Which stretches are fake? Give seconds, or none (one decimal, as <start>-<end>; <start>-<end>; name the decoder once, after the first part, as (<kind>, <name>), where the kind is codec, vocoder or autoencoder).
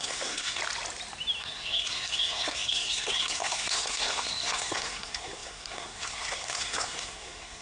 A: 0.0-0.6 (codec, SNAC); 1.4-7.6